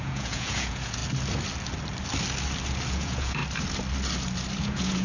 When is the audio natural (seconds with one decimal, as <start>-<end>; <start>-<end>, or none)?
1.0-2.9; 3.4-4.6

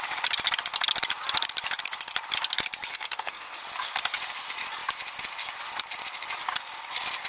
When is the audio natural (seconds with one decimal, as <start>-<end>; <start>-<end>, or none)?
0.0-2.9; 3.6-7.3